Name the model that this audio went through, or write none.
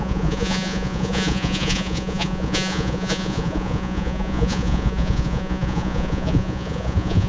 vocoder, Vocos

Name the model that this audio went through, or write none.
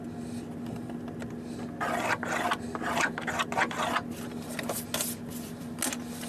none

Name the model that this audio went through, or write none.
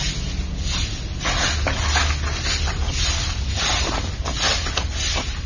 none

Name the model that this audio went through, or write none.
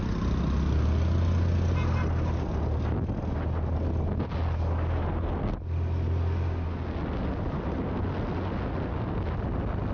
none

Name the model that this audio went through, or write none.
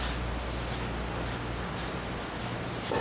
none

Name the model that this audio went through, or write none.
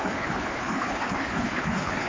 codec, HILCodec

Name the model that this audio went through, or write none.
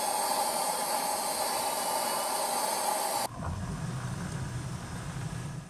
none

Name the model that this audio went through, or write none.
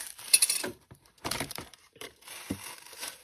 vocoder, BigVGAN v2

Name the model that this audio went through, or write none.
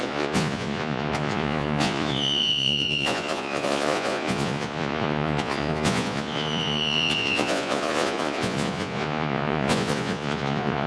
vocoder, Vocos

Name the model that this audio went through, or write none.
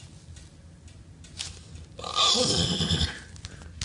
none